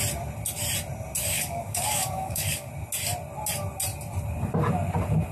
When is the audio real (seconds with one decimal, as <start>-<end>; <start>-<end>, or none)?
0.0-1.2; 2.7-5.3

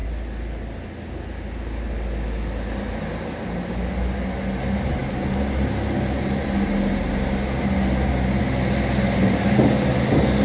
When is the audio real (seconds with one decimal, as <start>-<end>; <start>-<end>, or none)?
0.0-10.4

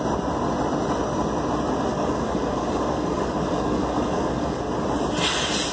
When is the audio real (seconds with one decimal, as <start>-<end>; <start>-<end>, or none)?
0.0-1.9; 4.6-5.7

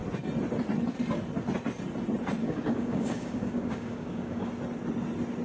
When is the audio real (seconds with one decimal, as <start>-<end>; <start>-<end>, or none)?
0.0-2.4; 4.5-5.4

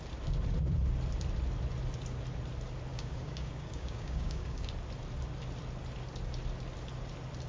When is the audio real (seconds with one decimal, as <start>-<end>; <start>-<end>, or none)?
0.0-2.9; 4.7-7.5

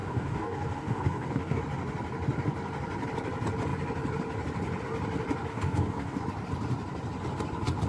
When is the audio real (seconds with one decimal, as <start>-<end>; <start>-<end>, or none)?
1.6-5.5; 6.2-7.9

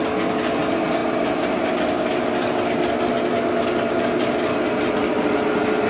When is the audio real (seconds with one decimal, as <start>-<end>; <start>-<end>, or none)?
0.0-5.9